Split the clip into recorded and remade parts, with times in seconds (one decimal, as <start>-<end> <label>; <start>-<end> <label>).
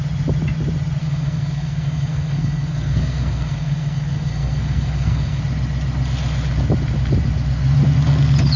0.0-1.0 recorded; 1.0-5.4 remade; 5.4-8.6 recorded